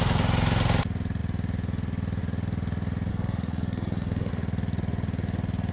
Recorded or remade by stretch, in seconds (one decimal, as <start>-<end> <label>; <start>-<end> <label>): 0.0-3.1 recorded; 3.1-4.3 remade; 4.3-5.7 recorded